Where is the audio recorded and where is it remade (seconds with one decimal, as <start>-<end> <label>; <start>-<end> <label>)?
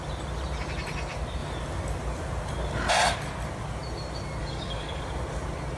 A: 0.0-4.4 recorded; 4.4-5.0 remade; 5.0-5.8 recorded